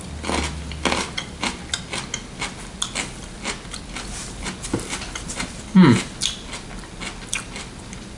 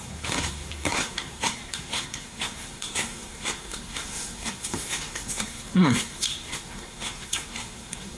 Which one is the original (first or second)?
first